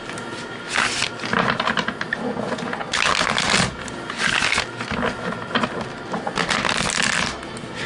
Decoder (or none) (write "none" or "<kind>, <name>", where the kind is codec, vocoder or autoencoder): none